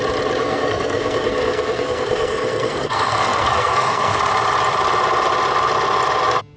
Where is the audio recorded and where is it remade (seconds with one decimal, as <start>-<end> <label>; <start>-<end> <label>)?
0.0-0.4 recorded; 0.4-4.2 remade; 4.2-6.6 recorded